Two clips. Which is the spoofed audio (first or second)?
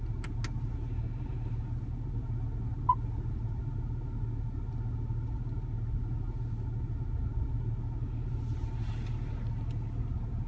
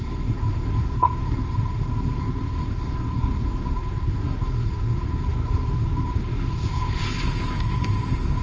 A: second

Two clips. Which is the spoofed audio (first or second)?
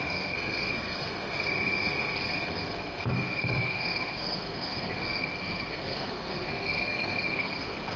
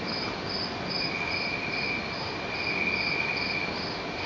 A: first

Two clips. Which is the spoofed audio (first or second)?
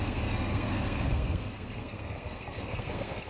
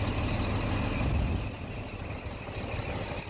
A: first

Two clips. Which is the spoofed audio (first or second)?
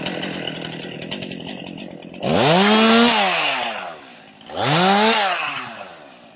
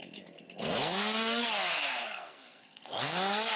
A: second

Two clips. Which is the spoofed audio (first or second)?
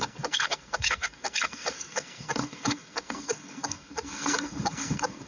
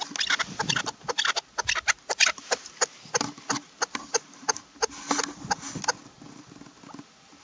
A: first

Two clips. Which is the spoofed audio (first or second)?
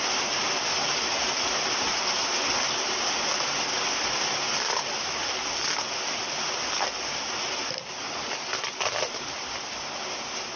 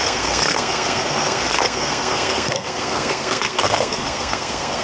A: second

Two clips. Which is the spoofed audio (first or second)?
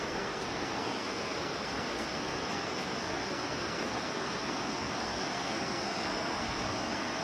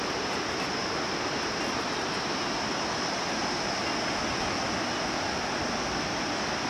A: first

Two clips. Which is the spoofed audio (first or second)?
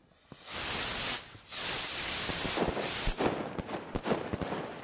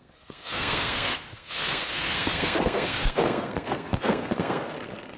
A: second